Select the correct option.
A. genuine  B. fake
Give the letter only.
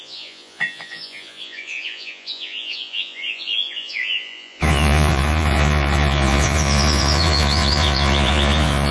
B